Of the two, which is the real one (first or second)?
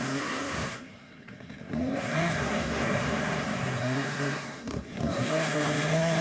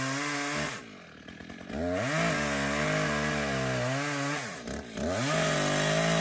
second